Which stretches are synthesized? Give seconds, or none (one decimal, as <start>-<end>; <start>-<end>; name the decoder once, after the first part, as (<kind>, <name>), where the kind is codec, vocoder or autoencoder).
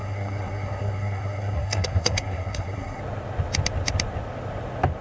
0.0-3.0 (codec, SNAC)